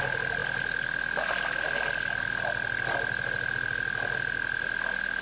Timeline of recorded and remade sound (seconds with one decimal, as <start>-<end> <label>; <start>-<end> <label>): 0.0-5.2 recorded